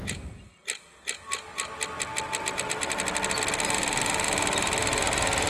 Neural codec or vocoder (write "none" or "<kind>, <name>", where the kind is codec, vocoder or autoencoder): none